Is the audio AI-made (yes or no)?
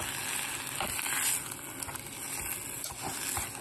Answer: no